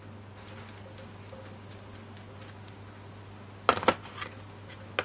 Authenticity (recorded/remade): recorded